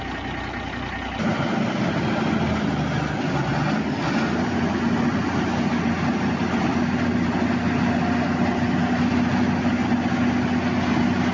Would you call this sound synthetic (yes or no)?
no